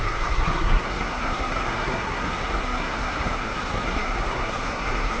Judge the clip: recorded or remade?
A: remade